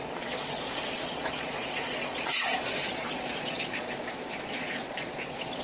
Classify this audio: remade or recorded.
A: remade